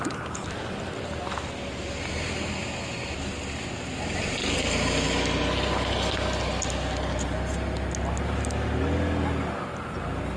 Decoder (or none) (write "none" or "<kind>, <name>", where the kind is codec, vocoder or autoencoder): none